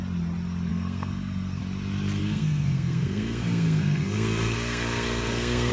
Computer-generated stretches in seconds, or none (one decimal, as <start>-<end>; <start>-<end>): 0.7-1.6; 2.2-5.7